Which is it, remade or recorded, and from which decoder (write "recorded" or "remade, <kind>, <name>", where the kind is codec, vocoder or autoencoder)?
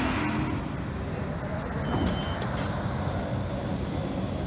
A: recorded